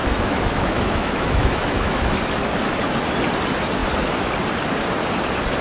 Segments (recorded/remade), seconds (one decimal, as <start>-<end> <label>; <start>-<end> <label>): 0.0-2.1 remade; 2.1-5.6 recorded